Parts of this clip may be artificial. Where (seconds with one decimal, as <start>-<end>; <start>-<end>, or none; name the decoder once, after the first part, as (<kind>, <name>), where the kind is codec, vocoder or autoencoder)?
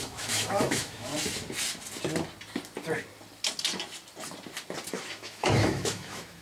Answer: 0.0-1.1 (autoencoder, DAC-VAE); 4.9-6.4